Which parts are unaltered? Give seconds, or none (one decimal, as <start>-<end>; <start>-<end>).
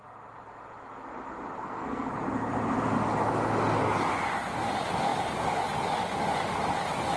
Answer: 0.0-1.6; 2.1-7.2